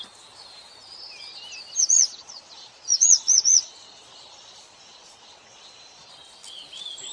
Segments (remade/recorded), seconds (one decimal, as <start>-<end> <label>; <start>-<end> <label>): 0.0-1.8 recorded; 1.8-6.1 remade; 6.1-7.1 recorded